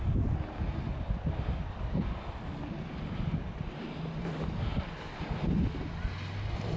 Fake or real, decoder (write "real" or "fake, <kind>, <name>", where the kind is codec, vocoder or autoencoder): real